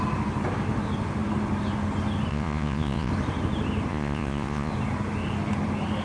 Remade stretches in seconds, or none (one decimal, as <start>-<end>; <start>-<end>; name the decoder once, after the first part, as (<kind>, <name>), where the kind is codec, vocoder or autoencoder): 2.3-3.1 (vocoder, Vocos); 3.9-4.7